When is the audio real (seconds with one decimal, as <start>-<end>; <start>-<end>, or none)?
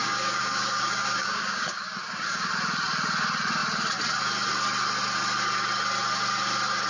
2.5-6.9